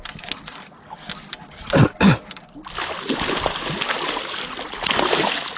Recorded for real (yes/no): yes